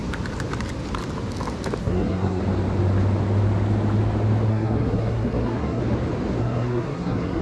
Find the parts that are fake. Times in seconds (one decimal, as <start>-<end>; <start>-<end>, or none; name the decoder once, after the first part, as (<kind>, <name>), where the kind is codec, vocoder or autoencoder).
1.8-2.4 (codec, SNAC); 4.5-5.8; 6.4-7.4